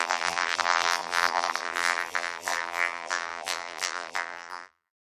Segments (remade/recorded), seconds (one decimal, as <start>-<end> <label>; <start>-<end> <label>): 0.0-5.2 remade